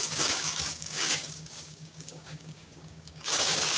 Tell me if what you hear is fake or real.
fake